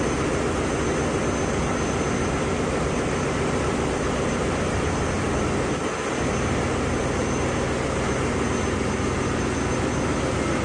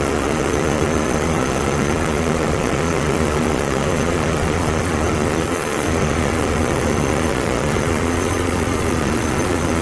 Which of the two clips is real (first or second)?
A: first